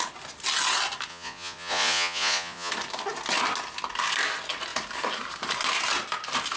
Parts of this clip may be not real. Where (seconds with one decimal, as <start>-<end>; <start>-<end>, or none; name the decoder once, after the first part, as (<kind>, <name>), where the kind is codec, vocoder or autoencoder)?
1.1-2.7 (vocoder, Vocos)